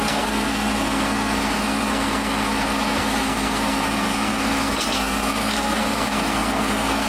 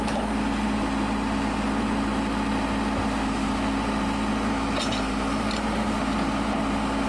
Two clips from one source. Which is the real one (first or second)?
second